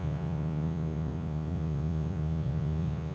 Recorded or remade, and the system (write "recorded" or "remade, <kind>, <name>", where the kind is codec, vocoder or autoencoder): remade, vocoder, Vocos